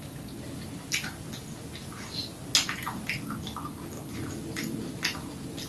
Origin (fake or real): real